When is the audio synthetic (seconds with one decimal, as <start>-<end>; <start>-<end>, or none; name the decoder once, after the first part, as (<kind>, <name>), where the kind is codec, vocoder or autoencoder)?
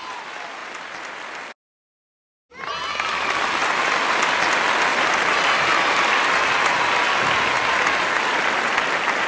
none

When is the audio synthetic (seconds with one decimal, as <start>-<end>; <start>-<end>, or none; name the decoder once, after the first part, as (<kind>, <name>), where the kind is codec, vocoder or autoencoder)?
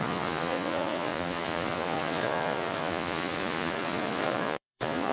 0.0-5.1 (vocoder, Vocos)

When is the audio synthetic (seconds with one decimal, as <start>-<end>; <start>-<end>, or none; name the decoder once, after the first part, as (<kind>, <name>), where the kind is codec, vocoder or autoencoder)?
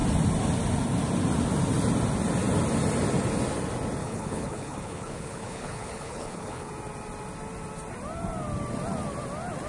4.0-6.7 (codec, HILCodec)